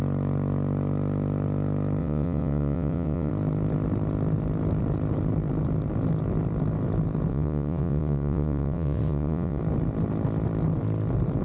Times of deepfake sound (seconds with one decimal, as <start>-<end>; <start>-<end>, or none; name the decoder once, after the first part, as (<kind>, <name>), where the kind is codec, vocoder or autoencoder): 2.0-3.3 (vocoder, WaveNeXt); 7.3-9.6